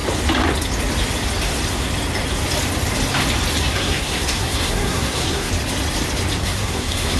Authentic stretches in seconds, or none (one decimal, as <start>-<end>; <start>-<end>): 0.0-3.6; 5.5-6.4